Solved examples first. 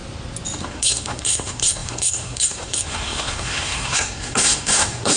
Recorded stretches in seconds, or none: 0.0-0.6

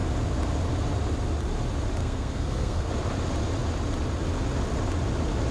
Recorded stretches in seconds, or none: 0.0-2.0; 2.9-5.5

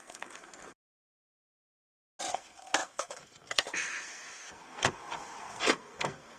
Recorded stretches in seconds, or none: 1.3-2.3

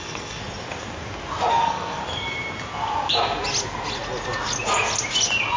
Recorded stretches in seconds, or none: 0.4-1.5; 2.0-5.6

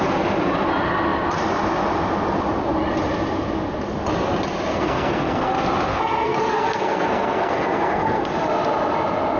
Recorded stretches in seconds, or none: 0.0-4.7; 5.5-5.9; 8.3-9.4

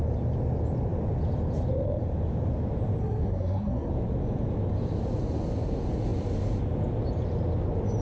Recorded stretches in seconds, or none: 0.0-3.0; 3.9-8.0

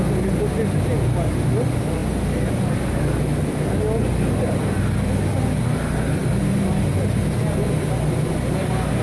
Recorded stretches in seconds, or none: 0.0-9.0

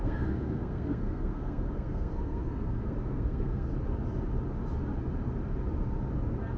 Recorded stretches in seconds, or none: 3.7-6.6